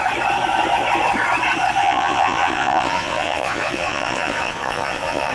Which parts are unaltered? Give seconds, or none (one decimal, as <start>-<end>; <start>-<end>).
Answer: 0.0-1.8